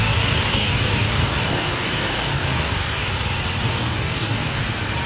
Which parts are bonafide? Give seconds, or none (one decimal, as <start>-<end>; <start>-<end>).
3.1-3.6; 4.6-5.1